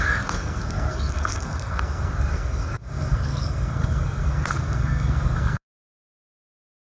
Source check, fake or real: fake